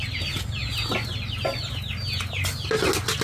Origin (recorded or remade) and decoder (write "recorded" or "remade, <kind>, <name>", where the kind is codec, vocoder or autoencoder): recorded